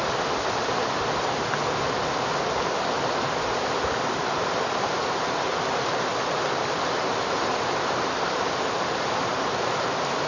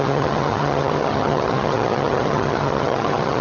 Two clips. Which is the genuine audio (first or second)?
first